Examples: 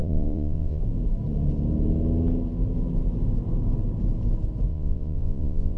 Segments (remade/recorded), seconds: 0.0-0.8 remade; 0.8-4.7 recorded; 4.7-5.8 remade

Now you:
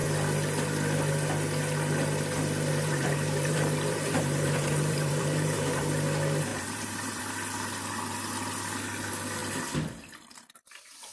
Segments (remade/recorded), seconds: 0.0-2.7 recorded; 2.7-5.8 remade; 5.8-6.5 recorded; 6.5-7.2 remade; 7.2-11.1 recorded